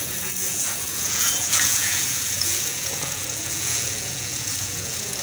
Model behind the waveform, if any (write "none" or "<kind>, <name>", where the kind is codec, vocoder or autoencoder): vocoder, Vocos